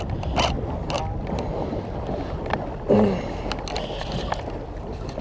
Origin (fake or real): real